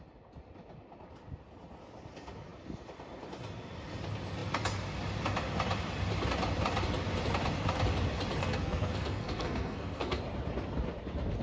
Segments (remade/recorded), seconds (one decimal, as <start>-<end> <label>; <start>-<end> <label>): 0.0-8.4 recorded; 8.4-10.2 remade; 10.2-11.4 recorded